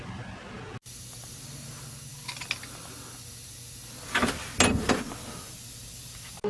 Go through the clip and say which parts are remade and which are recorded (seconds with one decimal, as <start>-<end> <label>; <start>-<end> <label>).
0.0-6.5 recorded